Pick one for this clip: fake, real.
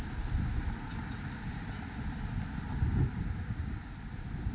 real